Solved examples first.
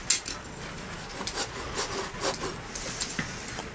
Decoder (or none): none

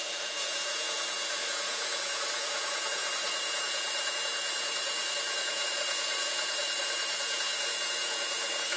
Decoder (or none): vocoder, Vocos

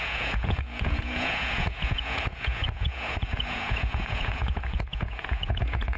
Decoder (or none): vocoder, Vocos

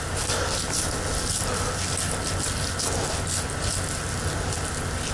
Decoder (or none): none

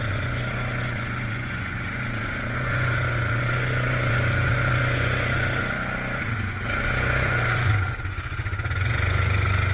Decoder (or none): vocoder, Vocos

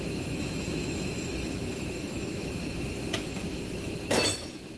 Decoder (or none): autoencoder, DAC-VAE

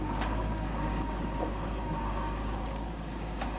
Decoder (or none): codec, DAC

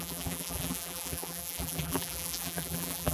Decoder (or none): vocoder, BigVGAN v2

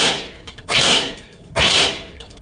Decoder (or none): codec, SNAC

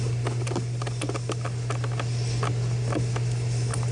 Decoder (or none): none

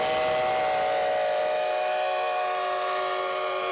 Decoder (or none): none